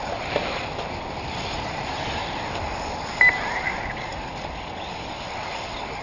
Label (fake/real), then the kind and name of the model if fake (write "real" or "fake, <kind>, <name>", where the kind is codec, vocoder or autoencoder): real